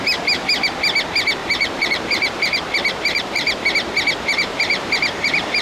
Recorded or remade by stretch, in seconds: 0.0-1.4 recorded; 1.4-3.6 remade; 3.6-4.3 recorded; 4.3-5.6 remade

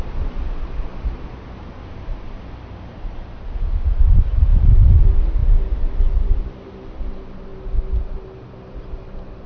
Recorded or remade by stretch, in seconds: 0.0-9.5 recorded

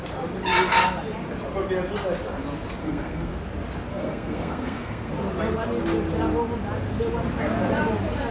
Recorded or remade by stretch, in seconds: 0.0-2.8 recorded; 2.8-3.3 remade; 3.3-3.9 recorded; 3.9-5.1 remade; 5.1-8.3 recorded

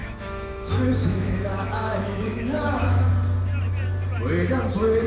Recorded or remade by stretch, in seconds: 0.0-3.1 remade; 3.1-5.1 recorded

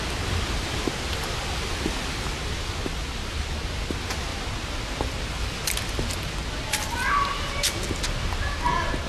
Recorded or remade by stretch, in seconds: 0.0-9.1 recorded

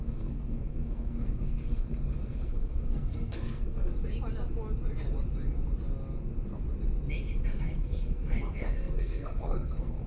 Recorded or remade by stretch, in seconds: 0.0-3.9 remade; 3.9-7.6 recorded; 7.6-10.1 remade

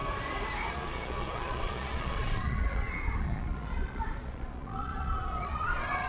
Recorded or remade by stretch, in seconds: 0.0-0.7 recorded; 0.7-6.1 remade